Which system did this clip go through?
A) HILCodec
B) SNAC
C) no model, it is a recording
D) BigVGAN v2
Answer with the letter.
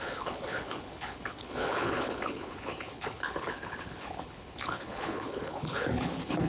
A